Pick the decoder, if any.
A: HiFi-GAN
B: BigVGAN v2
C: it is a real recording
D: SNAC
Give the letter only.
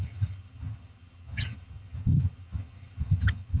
A